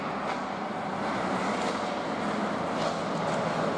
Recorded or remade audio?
recorded